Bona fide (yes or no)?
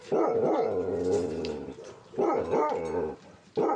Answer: yes